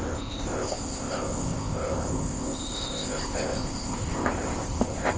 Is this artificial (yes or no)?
yes